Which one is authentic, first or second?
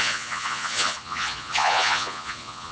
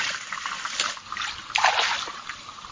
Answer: second